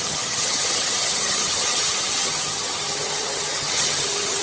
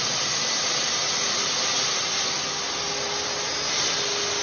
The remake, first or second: first